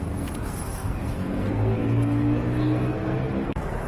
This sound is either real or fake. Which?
fake